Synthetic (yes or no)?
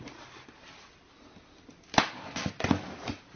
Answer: no